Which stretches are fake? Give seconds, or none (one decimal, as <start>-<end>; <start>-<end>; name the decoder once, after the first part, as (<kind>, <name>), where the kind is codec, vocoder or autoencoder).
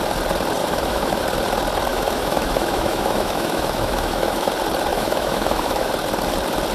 0.6-1.2 (autoencoder, DAC-VAE); 1.9-4.5; 4.9-5.9